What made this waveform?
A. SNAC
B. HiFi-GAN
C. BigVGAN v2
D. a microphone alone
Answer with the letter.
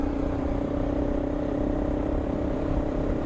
C